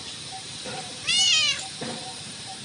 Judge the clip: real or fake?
fake